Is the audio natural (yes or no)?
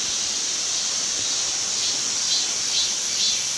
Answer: yes